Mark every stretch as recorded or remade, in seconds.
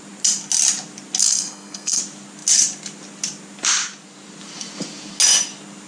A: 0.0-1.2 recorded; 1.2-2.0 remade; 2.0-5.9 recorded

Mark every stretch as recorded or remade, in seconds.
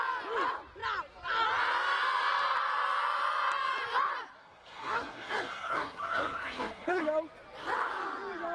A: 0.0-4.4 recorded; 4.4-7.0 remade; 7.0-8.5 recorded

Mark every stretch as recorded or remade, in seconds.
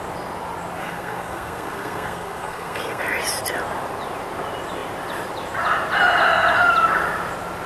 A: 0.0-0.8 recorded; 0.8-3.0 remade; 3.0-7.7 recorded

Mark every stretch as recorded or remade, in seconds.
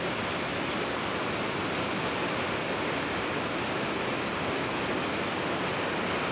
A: 0.0-6.3 recorded